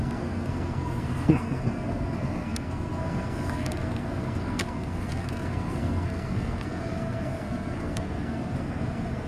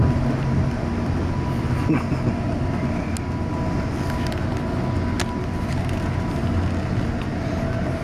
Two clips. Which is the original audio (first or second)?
second